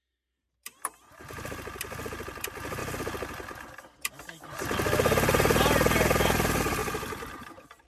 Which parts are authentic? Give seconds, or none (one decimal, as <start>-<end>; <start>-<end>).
0.0-7.9